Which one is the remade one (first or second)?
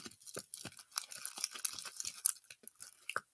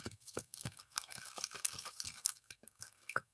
second